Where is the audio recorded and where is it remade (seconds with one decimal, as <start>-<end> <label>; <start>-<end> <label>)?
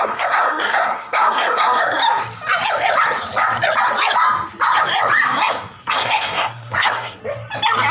0.0-2.0 remade; 2.0-5.5 recorded; 5.5-7.2 remade; 7.2-7.9 recorded